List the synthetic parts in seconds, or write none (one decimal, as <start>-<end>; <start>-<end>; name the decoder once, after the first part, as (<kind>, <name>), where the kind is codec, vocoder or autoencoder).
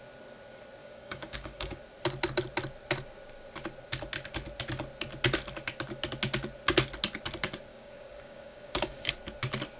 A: 0.8-1.8 (codec, DAC); 7.7-9.1